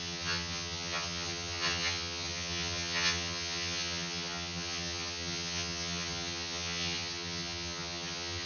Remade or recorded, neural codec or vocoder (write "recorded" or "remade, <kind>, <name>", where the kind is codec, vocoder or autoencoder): remade, vocoder, HiFi-GAN